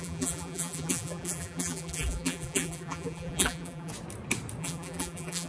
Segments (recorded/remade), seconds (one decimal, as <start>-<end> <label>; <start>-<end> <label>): 0.0-3.9 remade; 3.9-4.6 recorded; 4.6-5.5 remade